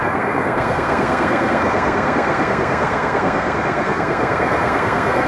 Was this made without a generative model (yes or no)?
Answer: no